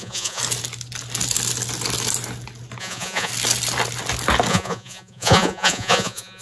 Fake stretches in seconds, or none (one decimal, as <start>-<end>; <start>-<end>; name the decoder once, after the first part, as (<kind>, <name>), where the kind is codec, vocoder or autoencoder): 0.0-0.4 (vocoder, Vocos); 2.8-3.3; 4.5-6.4